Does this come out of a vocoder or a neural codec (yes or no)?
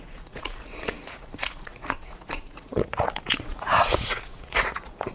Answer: yes